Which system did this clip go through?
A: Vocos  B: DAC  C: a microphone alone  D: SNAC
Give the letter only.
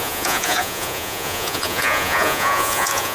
A